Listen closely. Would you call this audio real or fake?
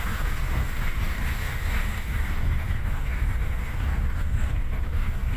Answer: fake